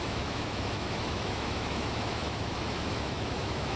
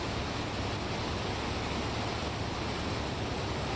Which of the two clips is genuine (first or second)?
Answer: second